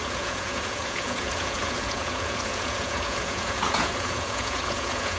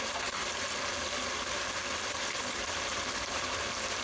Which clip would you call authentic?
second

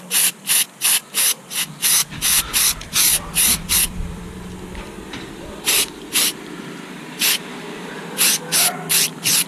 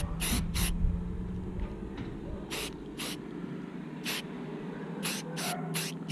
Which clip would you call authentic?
second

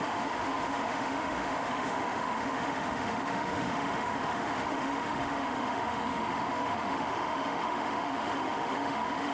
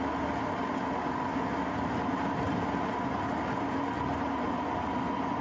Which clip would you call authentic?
second